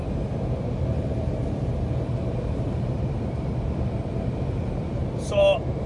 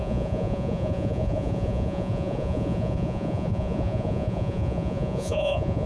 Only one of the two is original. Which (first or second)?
first